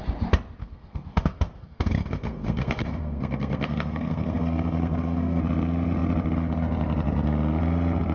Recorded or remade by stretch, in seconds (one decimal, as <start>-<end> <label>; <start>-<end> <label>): 0.0-0.6 recorded; 0.6-5.4 remade; 5.4-8.1 recorded